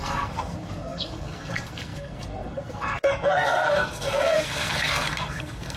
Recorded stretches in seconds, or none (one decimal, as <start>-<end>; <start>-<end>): none